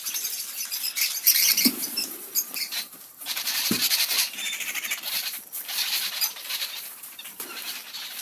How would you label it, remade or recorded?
remade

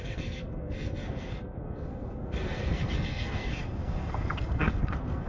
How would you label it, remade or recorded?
remade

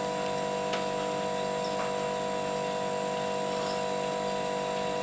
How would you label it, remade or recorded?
recorded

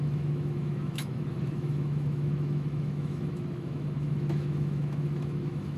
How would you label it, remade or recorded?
remade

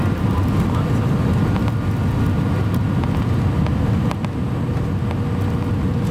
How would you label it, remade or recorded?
recorded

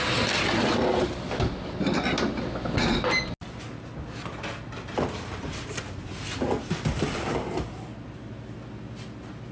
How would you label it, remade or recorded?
recorded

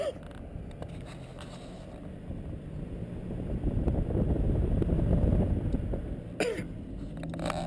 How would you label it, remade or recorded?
recorded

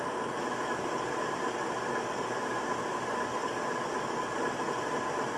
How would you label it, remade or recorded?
recorded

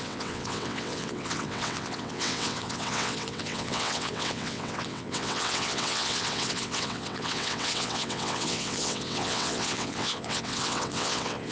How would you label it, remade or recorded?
remade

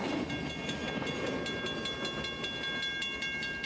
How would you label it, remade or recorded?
recorded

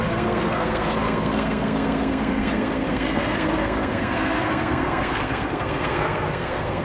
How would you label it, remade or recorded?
remade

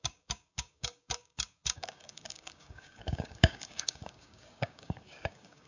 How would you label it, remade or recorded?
remade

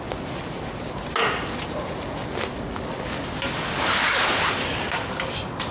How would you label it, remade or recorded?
recorded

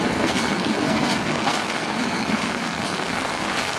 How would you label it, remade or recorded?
remade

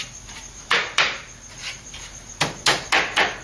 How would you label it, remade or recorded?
remade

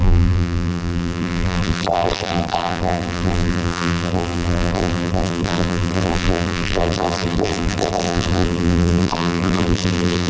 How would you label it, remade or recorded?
remade